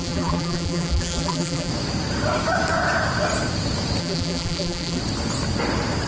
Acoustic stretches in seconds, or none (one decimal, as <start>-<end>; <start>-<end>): 1.7-4.0; 5.0-6.1